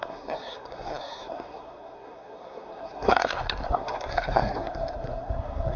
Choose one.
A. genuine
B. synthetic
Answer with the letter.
B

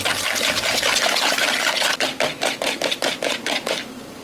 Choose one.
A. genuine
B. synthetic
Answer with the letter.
A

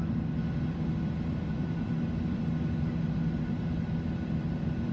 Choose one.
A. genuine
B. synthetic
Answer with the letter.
A